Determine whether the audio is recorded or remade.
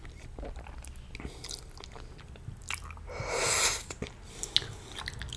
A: recorded